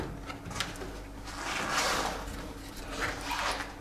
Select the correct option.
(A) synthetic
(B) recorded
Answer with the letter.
B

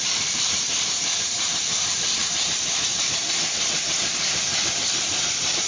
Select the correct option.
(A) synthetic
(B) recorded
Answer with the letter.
A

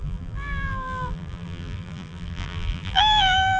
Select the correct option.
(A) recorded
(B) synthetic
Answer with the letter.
B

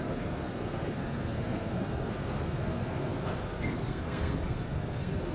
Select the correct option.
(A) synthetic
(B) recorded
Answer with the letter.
A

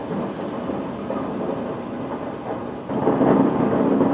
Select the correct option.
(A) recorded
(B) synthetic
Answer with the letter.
A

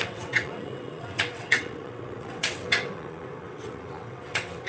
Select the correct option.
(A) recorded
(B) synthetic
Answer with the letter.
B